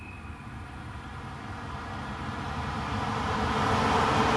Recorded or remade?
recorded